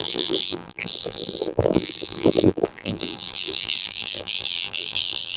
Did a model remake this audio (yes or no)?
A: yes